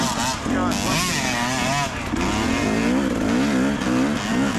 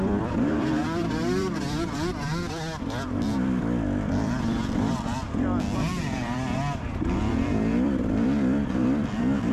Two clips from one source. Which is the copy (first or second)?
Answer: second